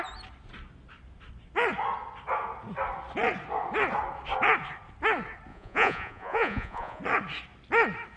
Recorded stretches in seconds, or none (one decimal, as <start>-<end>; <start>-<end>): 0.0-5.5; 7.0-8.2